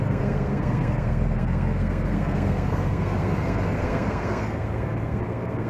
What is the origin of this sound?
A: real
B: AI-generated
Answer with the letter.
B